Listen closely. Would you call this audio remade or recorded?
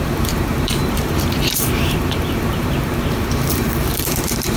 remade